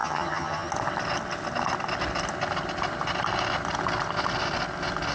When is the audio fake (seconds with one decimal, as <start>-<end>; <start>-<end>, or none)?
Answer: 0.0-0.7